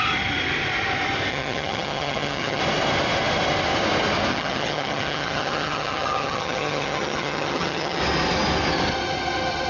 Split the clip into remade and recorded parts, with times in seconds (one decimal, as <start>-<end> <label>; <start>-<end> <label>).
0.0-1.3 recorded; 1.3-2.6 remade; 2.6-4.3 recorded; 4.3-8.0 remade; 8.0-9.7 recorded